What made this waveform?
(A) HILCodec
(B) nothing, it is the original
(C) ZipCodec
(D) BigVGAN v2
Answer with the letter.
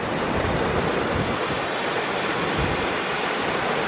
B